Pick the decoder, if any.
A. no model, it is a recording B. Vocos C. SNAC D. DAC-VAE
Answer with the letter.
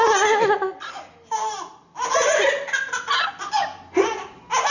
A